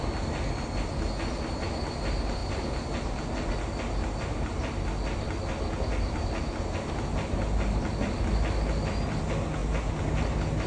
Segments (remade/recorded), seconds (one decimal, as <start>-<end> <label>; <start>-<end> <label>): 0.0-10.7 recorded